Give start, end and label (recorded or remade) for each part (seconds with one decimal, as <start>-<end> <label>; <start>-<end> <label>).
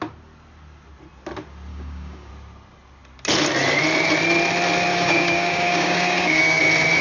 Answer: 0.0-1.7 recorded; 1.7-2.3 remade; 2.3-4.9 recorded; 4.9-6.6 remade; 6.6-7.0 recorded